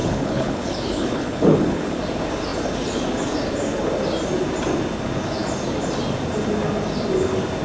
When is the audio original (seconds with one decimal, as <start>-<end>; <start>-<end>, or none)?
2.0-7.6

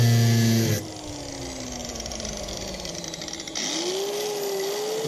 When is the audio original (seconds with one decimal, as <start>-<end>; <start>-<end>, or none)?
0.0-1.8; 3.6-5.1

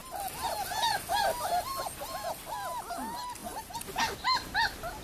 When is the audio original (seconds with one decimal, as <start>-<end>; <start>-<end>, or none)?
0.0-5.0

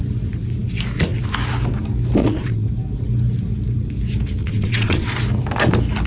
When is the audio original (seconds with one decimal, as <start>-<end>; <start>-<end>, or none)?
0.0-2.2; 2.7-4.4; 5.1-6.1

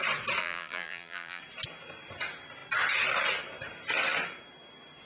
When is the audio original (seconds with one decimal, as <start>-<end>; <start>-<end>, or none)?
0.0-0.4; 1.4-5.1

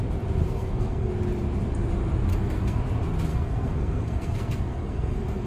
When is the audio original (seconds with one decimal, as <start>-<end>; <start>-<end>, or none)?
0.0-0.4; 1.1-2.3; 2.8-3.3

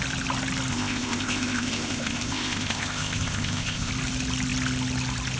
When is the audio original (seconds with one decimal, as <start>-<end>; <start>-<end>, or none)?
0.0-0.7; 3.9-5.4

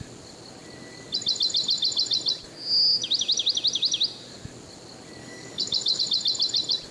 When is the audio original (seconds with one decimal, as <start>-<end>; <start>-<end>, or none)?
0.0-5.2; 6.0-6.9